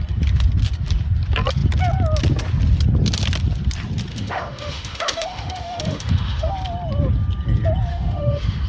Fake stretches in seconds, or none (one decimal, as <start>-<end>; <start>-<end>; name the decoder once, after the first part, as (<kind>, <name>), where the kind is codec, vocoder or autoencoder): 4.1-6.5 (autoencoder, DAC-VAE); 7.9-8.7